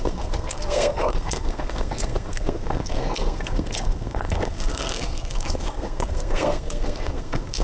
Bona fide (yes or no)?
no